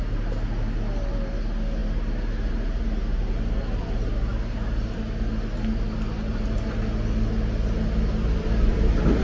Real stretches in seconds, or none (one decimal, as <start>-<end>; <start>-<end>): 0.0-9.2